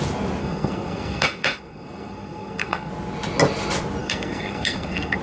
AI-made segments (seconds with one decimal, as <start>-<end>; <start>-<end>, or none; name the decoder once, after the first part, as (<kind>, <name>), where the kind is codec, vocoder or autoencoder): 0.4-2.9 (codec, SNAC); 4.0-5.2